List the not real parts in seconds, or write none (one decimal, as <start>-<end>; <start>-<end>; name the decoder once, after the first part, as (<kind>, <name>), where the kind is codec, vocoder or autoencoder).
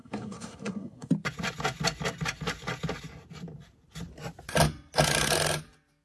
0.0-1.1 (codec, SNAC)